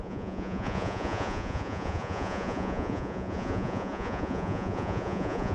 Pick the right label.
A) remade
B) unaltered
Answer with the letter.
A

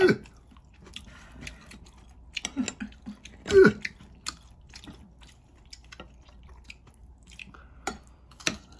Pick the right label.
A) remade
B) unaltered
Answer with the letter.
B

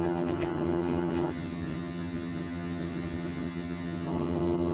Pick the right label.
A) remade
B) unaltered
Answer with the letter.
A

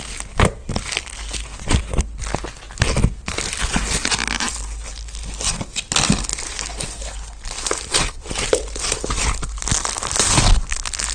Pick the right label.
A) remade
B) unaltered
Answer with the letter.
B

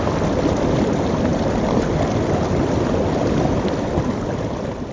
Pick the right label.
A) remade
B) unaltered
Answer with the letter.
B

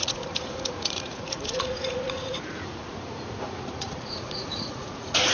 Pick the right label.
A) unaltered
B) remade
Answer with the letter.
B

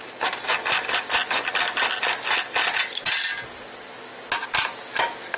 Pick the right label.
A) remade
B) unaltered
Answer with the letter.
B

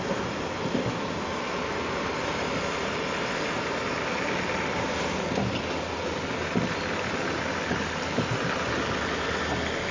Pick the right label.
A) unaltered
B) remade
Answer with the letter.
A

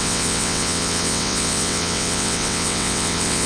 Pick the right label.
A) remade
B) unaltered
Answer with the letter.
A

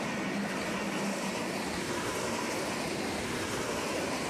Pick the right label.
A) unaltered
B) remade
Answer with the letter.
A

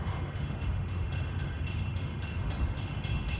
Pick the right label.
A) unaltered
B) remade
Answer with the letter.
B